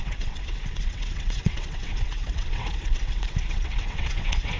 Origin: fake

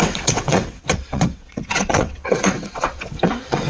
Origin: fake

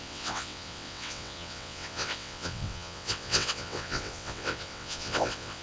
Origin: fake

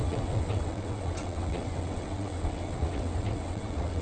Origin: fake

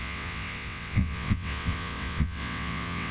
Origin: fake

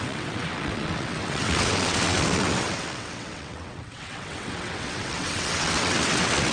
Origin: fake